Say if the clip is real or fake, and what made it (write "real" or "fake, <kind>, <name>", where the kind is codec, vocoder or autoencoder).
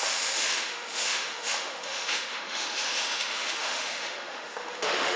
fake, autoencoder, DAC-VAE